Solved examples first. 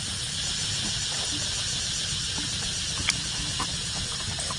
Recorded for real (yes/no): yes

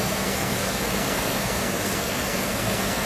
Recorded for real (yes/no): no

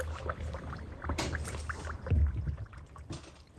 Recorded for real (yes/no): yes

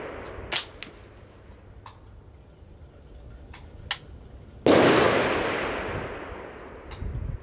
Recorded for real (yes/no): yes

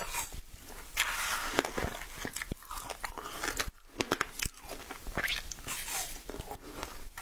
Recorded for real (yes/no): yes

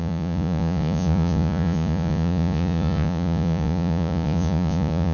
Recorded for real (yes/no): no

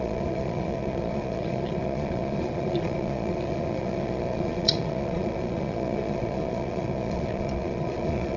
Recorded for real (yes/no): no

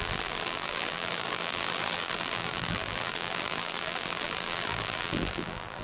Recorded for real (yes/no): no